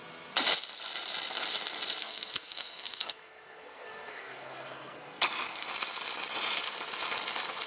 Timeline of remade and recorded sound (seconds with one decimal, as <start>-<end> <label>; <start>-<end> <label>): 0.0-2.0 recorded; 2.0-5.7 remade; 5.7-7.7 recorded